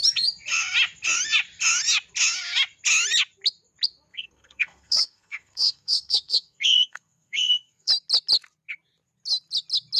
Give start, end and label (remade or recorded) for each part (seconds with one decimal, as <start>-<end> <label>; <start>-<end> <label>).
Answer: 0.0-4.1 recorded; 4.1-7.9 remade; 7.9-10.0 recorded